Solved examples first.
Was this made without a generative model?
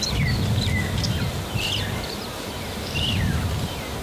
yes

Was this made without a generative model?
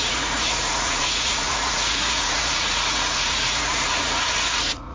no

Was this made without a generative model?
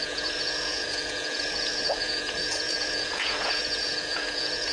no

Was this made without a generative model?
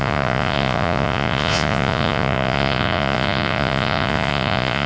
no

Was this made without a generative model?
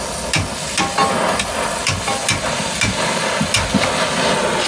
yes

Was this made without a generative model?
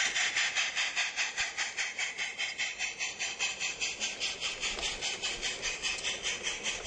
yes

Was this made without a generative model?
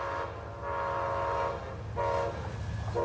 yes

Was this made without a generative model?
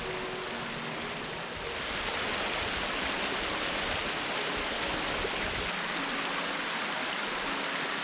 yes